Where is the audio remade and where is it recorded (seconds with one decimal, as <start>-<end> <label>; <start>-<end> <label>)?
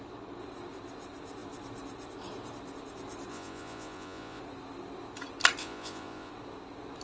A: 0.0-3.3 recorded; 3.3-4.4 remade; 4.4-5.6 recorded; 5.6-6.3 remade; 6.3-7.0 recorded